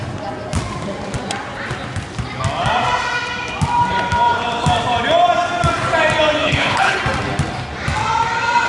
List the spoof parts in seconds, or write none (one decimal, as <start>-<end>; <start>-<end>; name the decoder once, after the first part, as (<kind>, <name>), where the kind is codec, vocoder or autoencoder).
6.4-7.0 (codec, HILCodec)